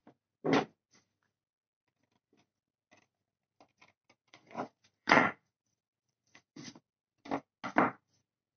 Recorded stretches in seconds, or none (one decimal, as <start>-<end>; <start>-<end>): 0.0-4.2; 6.8-8.6